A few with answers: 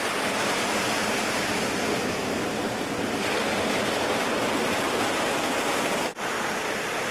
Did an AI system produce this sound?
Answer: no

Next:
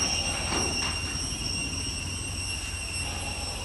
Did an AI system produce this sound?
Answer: no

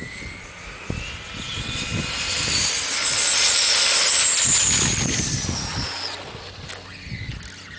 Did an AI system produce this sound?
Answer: no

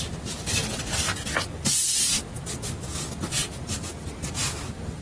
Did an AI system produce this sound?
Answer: no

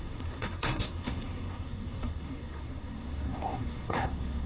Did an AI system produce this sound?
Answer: yes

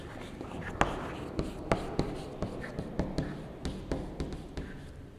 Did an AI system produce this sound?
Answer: no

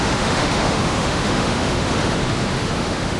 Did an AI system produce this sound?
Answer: yes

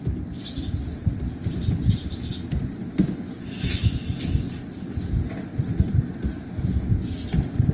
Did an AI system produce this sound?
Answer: no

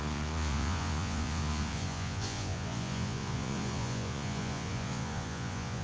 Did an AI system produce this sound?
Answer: yes